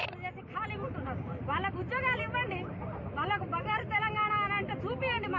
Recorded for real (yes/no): yes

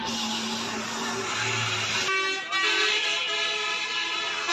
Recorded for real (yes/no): yes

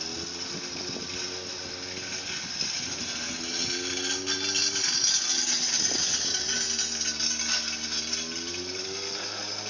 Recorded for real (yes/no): yes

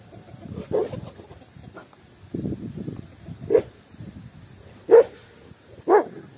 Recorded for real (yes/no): yes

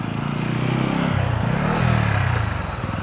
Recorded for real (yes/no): yes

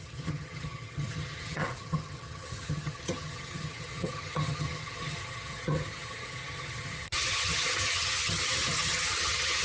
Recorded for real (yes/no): no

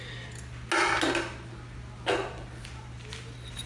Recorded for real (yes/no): yes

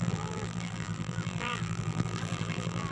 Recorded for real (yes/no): no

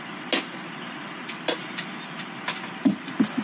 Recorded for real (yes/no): yes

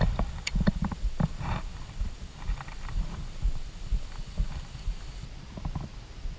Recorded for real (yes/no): yes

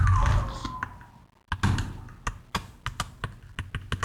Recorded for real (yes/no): yes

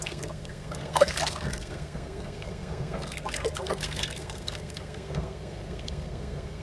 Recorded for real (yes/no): no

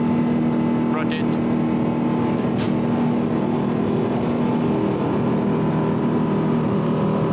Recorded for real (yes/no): yes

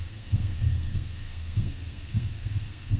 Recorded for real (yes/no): no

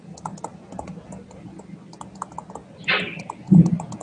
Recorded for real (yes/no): yes